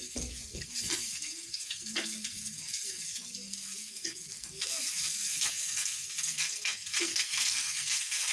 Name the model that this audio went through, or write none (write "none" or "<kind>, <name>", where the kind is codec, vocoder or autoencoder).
codec, SNAC